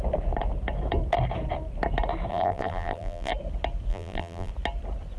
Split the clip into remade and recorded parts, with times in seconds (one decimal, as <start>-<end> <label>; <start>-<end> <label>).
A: 0.0-2.3 recorded; 2.3-3.3 remade; 3.3-3.9 recorded; 3.9-4.5 remade; 4.5-5.2 recorded